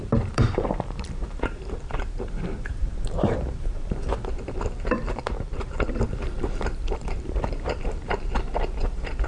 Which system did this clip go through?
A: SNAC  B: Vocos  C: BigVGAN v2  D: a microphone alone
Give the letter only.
C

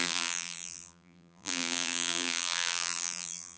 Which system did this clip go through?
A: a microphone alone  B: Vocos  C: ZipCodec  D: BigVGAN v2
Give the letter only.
D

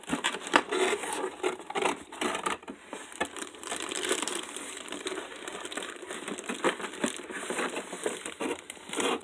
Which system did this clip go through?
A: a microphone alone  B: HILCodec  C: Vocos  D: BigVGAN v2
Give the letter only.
D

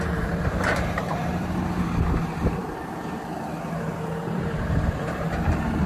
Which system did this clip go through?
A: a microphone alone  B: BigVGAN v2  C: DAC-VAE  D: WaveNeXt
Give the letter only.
B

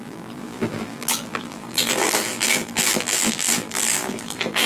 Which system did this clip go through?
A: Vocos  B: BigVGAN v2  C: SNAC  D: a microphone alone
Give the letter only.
B